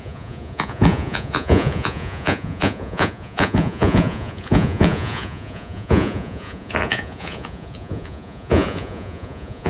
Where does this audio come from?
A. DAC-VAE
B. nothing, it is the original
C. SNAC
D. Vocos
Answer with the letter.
D